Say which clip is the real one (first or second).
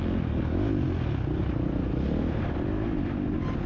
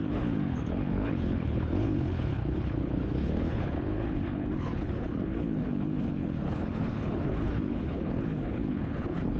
first